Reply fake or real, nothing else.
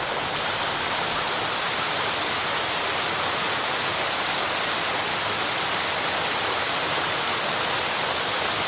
real